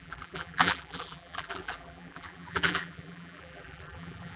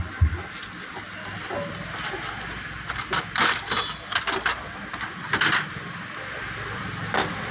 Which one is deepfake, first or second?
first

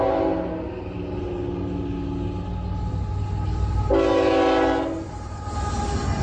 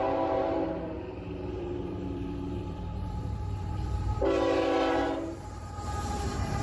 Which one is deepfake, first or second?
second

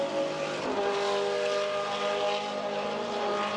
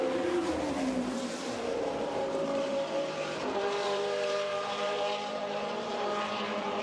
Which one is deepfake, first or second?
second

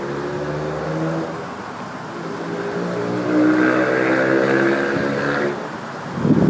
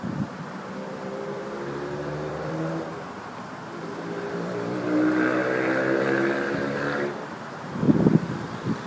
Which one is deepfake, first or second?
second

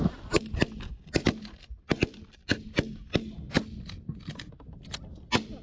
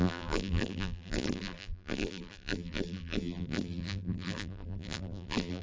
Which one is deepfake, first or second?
second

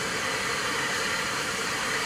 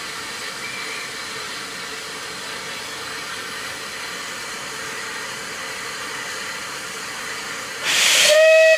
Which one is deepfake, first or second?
first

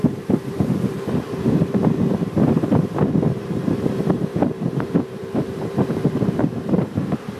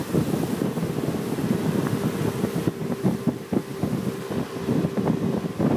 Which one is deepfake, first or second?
first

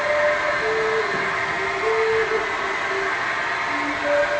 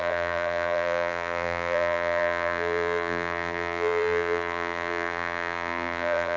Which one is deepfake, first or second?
second